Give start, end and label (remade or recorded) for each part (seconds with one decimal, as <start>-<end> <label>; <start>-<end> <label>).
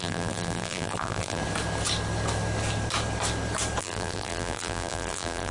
0.0-1.4 remade; 1.4-3.8 recorded; 3.8-5.5 remade